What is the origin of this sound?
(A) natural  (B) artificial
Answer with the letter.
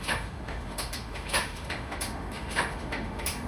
B